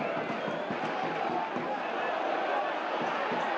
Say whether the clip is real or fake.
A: real